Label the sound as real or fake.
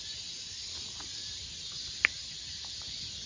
real